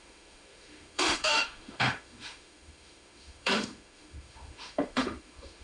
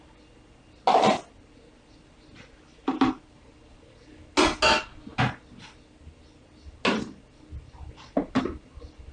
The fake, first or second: first